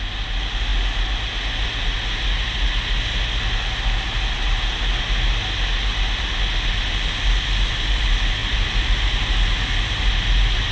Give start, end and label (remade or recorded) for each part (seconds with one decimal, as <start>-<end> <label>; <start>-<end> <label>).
0.0-10.7 recorded